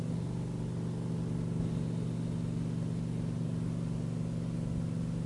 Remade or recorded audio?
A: recorded